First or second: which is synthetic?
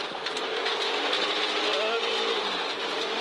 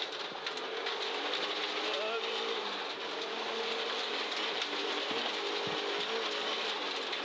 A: first